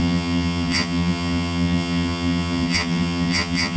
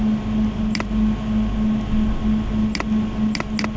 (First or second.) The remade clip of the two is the first